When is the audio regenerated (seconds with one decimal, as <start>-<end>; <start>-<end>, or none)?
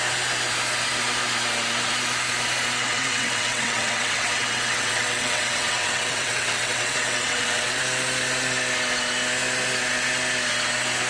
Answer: 2.8-7.8